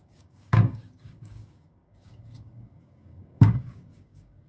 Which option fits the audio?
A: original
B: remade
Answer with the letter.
B